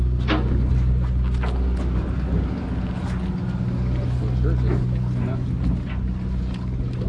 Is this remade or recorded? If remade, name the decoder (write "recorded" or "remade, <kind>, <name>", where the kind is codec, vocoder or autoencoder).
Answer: recorded